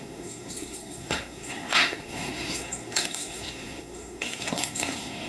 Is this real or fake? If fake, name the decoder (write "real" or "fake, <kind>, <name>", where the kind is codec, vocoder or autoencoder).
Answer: fake, codec, SNAC